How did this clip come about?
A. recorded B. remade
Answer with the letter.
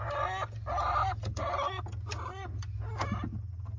A